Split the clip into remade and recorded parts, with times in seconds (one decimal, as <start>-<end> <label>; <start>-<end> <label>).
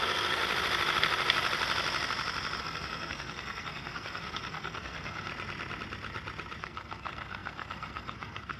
0.0-0.4 remade; 0.4-2.6 recorded; 2.6-5.3 remade; 5.3-6.6 recorded; 6.6-8.6 remade